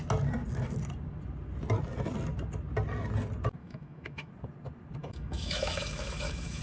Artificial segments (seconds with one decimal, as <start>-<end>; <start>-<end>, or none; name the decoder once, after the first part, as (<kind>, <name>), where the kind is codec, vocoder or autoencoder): 3.6-4.3 (autoencoder, DAC-VAE); 5.0-6.6